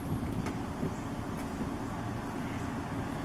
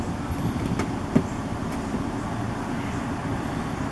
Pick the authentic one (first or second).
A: first